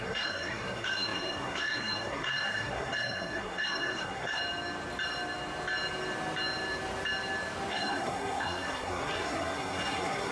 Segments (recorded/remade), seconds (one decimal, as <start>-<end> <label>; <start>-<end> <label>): 0.0-4.4 remade; 4.4-7.7 recorded; 7.7-10.3 remade